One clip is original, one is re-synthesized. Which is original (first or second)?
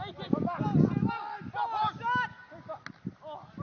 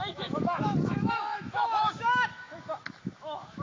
first